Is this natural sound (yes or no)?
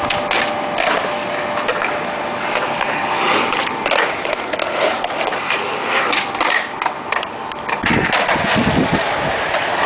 yes